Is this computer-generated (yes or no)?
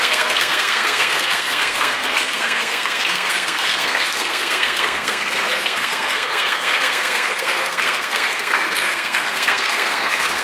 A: yes